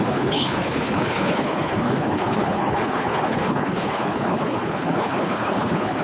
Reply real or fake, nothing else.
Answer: fake